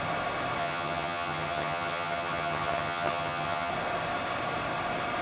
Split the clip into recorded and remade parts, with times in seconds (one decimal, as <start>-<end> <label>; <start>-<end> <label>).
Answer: 0.0-0.6 recorded; 0.6-3.7 remade; 3.7-5.2 recorded